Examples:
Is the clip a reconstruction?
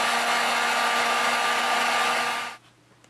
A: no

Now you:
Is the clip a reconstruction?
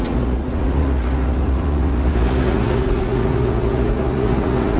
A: yes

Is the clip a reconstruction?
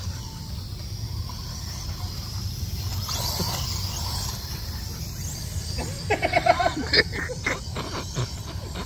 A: no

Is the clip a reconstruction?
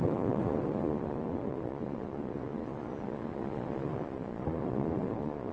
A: yes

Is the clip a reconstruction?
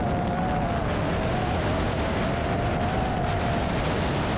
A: no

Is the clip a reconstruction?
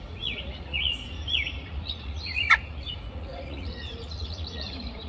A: yes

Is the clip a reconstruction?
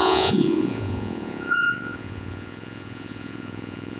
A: yes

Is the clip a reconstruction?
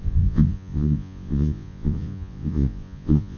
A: yes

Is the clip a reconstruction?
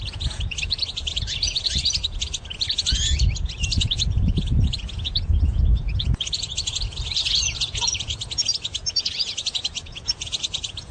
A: yes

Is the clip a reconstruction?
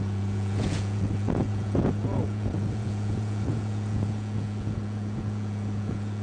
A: yes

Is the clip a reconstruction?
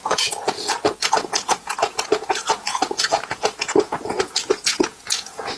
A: yes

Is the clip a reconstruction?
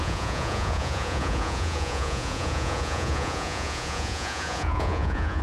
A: yes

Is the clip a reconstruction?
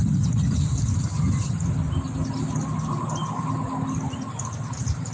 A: no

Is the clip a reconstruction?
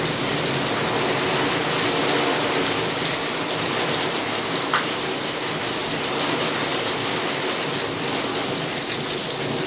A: no